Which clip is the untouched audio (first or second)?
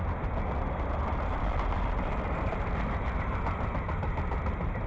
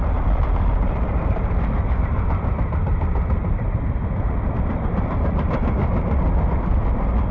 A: first